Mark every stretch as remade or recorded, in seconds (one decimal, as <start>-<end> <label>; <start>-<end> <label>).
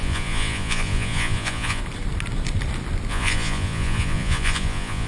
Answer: 0.0-1.8 remade; 1.8-3.1 recorded; 3.1-5.1 remade